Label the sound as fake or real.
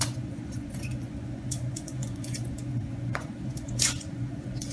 fake